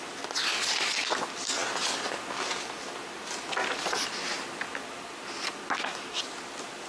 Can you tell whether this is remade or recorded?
recorded